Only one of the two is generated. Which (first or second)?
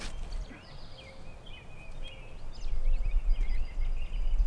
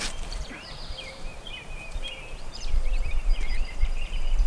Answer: second